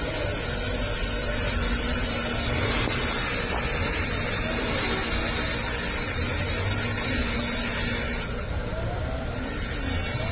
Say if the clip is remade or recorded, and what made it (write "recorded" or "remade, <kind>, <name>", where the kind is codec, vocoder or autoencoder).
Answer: recorded